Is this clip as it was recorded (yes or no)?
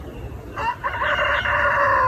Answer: yes